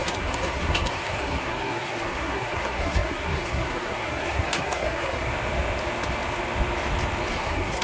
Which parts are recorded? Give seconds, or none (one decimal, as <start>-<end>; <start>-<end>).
5.3-7.3